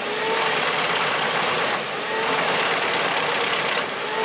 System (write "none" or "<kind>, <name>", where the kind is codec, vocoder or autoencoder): none